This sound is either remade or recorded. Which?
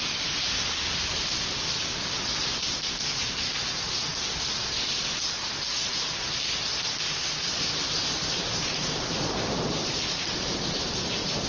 remade